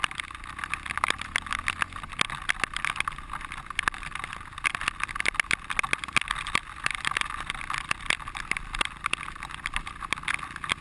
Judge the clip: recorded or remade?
recorded